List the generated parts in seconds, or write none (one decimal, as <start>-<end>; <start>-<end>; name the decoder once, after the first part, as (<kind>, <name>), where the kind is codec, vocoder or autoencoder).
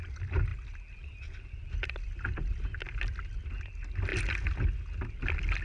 none